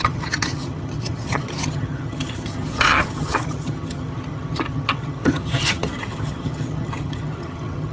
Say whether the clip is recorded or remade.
remade